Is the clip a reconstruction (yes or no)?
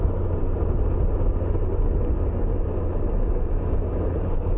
no